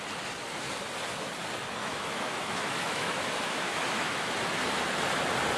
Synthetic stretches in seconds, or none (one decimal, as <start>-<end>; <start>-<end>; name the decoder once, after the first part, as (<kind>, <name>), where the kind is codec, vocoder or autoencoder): 1.8-4.3 (autoencoder, DAC-VAE)